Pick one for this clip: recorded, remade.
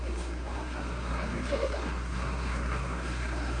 remade